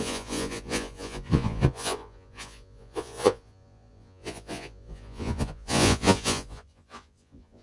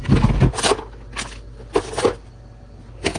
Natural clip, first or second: second